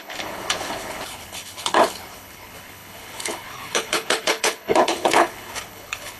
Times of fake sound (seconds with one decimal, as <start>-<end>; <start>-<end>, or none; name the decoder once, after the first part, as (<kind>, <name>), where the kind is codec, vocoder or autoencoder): 0.0-6.2 (codec, HILCodec)